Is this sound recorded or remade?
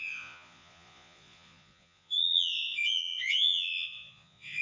remade